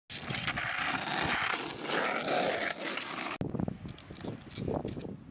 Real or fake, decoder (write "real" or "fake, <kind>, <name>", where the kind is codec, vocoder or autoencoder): real